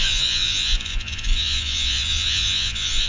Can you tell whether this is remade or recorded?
remade